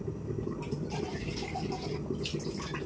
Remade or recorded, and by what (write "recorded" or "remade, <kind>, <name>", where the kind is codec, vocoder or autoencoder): recorded